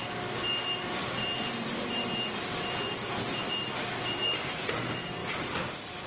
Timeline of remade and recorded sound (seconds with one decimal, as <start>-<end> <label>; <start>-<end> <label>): 0.0-1.0 recorded; 1.0-4.7 remade; 4.7-5.2 recorded; 5.2-6.1 remade